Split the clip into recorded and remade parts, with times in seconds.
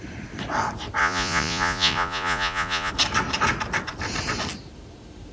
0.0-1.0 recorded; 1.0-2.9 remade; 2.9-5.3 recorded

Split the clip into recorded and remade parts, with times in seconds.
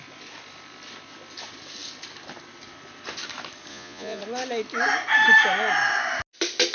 0.0-3.7 recorded; 3.7-4.2 remade; 4.2-6.7 recorded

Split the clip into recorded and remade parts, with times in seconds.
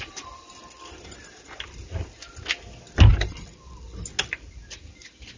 0.0-5.4 recorded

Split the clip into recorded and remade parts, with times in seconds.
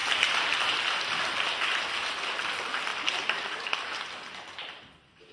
0.0-5.3 recorded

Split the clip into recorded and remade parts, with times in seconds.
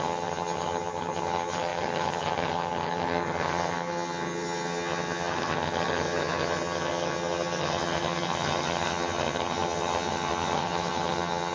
0.0-11.5 remade